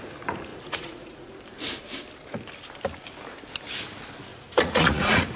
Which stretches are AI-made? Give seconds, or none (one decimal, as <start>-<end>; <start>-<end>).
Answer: 0.5-1.3; 4.3-5.4